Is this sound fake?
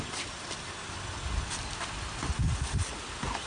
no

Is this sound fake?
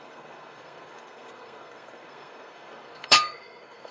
yes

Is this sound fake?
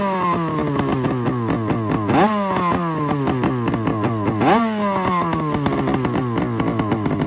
no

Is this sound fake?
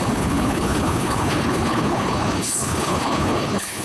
yes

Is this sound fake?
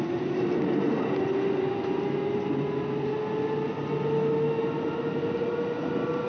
no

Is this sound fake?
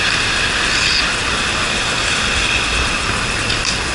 no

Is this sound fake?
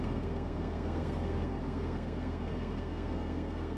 yes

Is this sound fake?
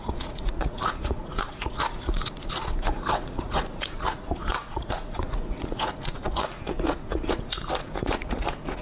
yes